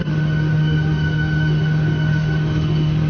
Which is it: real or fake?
fake